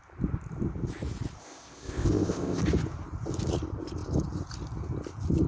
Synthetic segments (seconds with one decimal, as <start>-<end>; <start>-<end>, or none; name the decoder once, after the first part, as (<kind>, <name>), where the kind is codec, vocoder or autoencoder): 1.4-2.6 (codec, ZipCodec)